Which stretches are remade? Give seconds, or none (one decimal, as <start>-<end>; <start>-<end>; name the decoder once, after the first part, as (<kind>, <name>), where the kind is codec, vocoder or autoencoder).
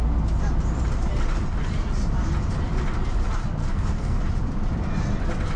3.6-4.2 (codec, SNAC)